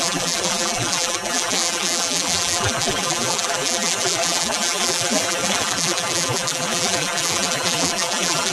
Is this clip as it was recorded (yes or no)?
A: no